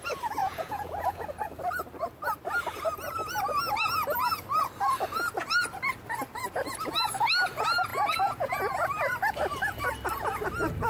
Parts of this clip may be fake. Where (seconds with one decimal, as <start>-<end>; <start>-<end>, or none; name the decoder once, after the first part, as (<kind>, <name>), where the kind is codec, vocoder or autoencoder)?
0.4-1.2 (vocoder, Vocos); 7.9-8.7